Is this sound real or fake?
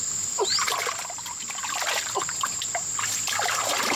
real